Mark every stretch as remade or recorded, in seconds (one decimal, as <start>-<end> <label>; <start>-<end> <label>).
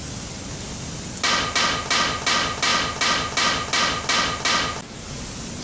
0.0-5.6 recorded